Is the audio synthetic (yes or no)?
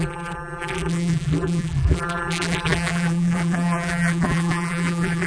yes